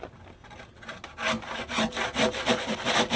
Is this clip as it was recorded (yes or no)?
yes